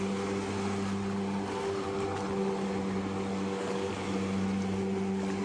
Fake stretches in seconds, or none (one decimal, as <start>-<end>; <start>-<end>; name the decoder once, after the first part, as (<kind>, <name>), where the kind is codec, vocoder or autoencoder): 3.3-3.9 (codec, DAC)